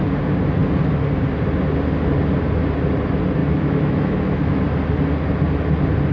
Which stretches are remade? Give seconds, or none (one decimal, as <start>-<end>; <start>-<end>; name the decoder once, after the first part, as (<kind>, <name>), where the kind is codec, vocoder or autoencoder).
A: 3.4-4.6 (autoencoder, DAC-VAE)